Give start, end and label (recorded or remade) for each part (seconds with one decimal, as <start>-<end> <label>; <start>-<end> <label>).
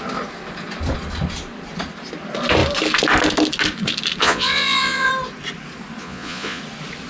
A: 0.0-4.2 recorded; 4.2-5.1 remade; 5.1-6.0 recorded; 6.0-6.6 remade; 6.6-7.1 recorded